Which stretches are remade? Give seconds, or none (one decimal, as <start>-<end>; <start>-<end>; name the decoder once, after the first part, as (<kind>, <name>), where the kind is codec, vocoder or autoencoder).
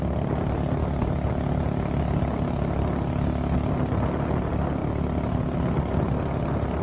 none